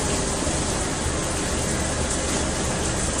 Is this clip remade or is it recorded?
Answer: recorded